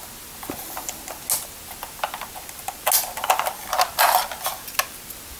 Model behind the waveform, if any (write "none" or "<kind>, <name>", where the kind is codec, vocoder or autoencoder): none